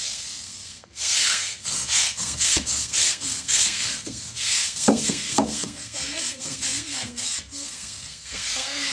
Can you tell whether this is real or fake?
fake